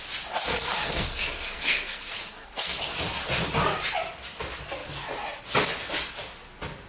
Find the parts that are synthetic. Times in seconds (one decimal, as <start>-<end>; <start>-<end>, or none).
0.5-2.8